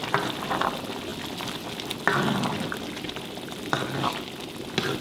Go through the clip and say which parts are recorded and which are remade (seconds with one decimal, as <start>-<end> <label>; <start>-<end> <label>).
0.0-5.0 recorded